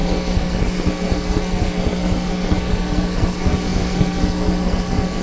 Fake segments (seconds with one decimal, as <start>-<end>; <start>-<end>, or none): 0.0-5.2